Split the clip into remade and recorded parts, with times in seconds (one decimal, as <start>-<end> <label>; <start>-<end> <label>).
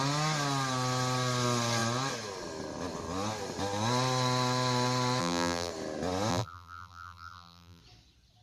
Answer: 0.0-5.2 recorded; 5.2-5.7 remade; 5.7-6.3 recorded; 6.3-7.8 remade; 7.8-8.4 recorded